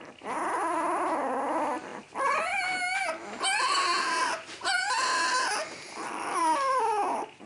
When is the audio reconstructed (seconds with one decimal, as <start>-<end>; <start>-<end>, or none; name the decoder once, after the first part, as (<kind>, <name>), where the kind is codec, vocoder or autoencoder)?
none